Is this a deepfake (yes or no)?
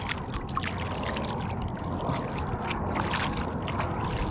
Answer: no